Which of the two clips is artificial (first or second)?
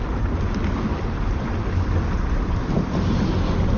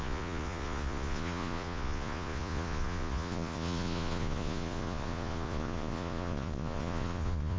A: second